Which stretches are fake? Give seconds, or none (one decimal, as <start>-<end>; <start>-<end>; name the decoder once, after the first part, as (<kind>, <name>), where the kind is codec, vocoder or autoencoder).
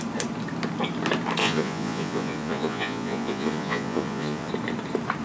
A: 1.4-4.5 (vocoder, Vocos)